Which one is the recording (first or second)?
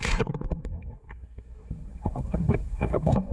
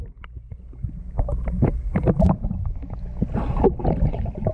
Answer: second